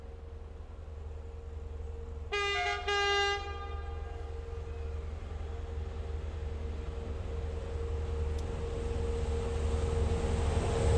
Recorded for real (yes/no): yes